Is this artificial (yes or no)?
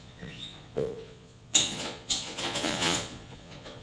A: yes